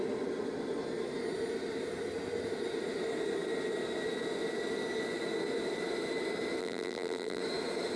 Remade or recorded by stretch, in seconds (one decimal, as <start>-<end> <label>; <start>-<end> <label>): 0.0-6.6 recorded; 6.6-7.4 remade; 7.4-8.0 recorded